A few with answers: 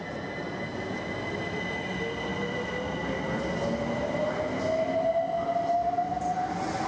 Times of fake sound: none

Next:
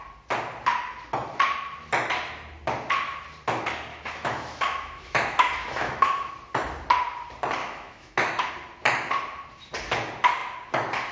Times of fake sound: 3.9-6.3; 7.6-8.5

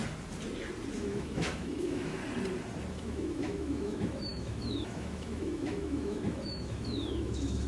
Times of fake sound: 0.9-2.2; 2.9-7.7

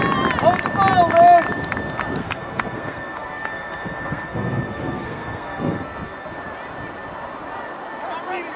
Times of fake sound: 2.2-6.3

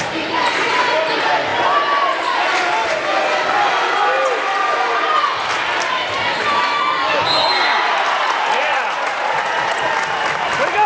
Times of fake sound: 8.2-9.9

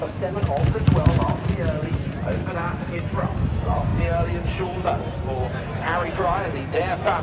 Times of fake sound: 2.4-3.0

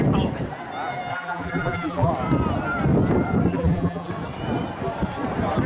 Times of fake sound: 1.1-2.1; 3.5-4.1